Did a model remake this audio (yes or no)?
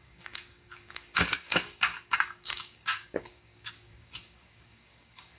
yes